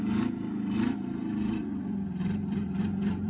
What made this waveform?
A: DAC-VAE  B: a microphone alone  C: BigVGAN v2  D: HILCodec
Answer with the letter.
C